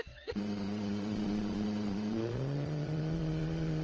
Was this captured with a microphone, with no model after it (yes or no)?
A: no